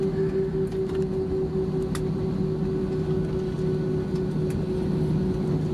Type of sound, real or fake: real